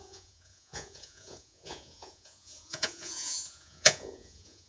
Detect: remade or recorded remade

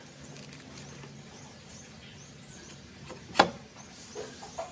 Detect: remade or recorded recorded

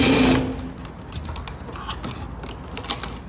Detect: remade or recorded recorded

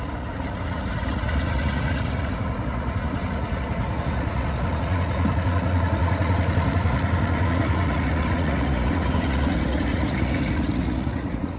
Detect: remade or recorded remade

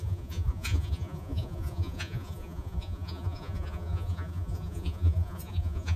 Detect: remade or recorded remade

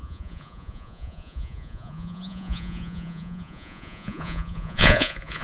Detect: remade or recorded remade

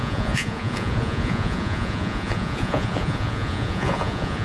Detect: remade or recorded remade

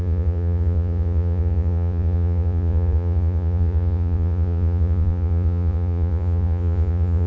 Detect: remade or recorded remade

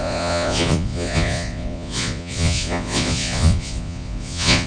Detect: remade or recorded remade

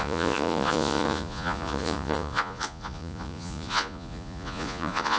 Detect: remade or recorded remade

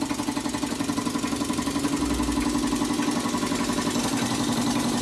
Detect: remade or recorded recorded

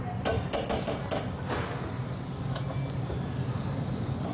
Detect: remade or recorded recorded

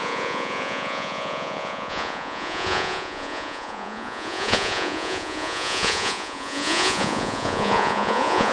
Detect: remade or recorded remade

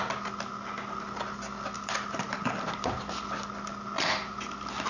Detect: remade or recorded recorded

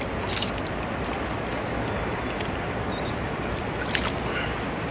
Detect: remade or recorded recorded